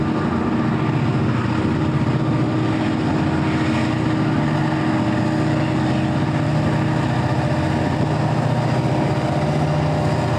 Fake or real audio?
real